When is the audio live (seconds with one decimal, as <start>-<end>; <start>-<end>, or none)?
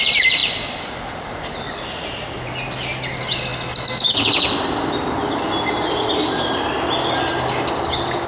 0.0-8.3